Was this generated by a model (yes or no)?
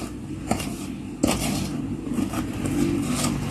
no